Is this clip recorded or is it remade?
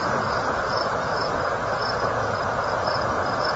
remade